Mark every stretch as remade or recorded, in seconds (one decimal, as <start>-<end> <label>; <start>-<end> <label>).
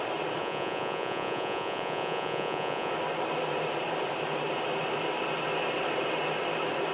0.0-0.4 recorded; 0.4-2.9 remade; 2.9-6.9 recorded